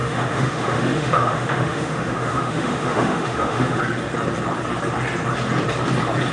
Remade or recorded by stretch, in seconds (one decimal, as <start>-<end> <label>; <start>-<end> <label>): 0.0-3.8 remade; 3.8-6.3 recorded